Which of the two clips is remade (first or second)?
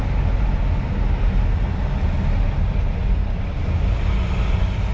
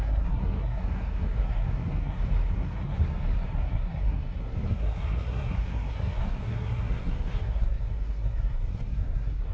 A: second